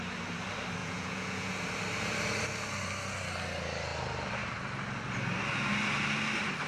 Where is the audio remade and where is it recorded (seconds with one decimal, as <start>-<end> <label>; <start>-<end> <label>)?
0.0-0.8 recorded; 0.8-1.6 remade; 1.6-6.7 recorded